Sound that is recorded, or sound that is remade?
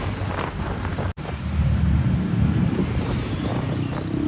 remade